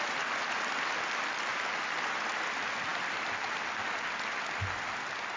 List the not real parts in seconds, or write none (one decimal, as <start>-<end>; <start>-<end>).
none